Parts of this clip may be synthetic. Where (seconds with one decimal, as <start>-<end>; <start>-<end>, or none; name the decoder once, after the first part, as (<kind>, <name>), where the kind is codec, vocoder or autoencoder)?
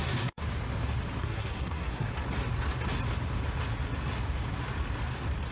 0.0-0.4 (codec, SNAC); 1.2-2.1